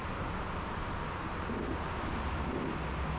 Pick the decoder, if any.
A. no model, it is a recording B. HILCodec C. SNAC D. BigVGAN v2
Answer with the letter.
A